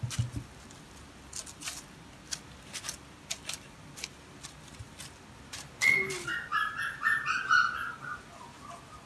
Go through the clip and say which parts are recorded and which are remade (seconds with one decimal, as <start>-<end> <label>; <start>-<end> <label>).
0.0-9.1 recorded